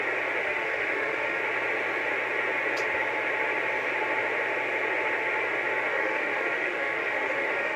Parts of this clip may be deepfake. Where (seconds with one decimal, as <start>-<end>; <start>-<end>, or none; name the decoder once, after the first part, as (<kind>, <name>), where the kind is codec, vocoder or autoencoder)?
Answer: 0.4-1.4 (autoencoder, DAC-VAE); 5.9-7.8